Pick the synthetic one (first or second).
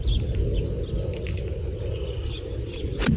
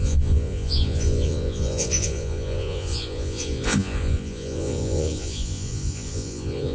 second